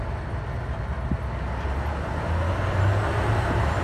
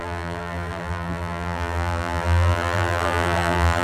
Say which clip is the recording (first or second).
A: first